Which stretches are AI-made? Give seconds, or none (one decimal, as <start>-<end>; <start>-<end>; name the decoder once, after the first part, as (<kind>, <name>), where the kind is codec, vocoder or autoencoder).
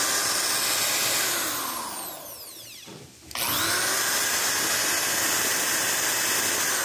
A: none